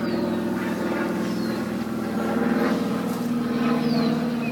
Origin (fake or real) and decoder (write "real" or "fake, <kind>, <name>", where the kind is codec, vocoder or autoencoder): real